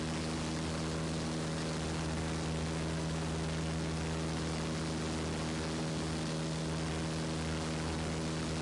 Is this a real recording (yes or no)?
yes